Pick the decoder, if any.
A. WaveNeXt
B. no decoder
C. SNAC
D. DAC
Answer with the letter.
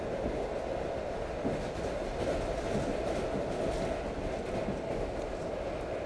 B